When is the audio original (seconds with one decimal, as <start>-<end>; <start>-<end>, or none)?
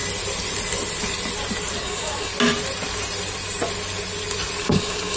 0.0-1.8; 2.3-4.6